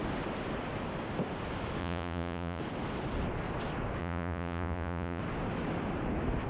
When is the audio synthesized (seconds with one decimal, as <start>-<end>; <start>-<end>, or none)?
1.8-2.6; 4.0-5.2